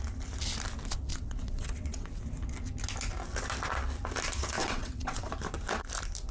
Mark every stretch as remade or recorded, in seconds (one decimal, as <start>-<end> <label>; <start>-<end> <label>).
0.0-1.1 recorded; 1.1-2.2 remade; 2.2-4.6 recorded; 4.6-5.3 remade; 5.3-6.3 recorded